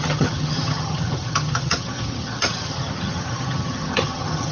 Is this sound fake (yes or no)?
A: yes